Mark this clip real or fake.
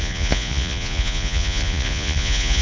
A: fake